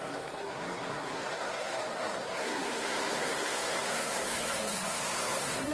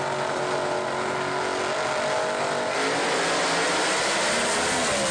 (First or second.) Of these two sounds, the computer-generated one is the first